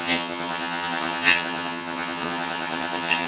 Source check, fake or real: fake